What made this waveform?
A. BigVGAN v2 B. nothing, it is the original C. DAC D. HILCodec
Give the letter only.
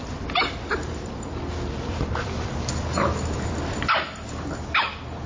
A